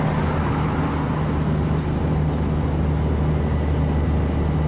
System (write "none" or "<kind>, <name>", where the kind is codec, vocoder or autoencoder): none